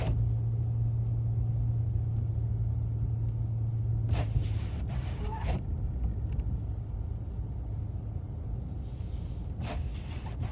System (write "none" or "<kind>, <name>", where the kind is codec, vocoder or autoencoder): none